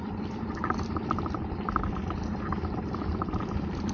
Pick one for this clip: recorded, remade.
recorded